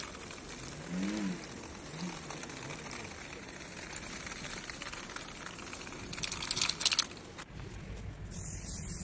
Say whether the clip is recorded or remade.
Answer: recorded